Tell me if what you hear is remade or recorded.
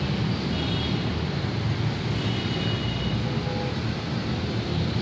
recorded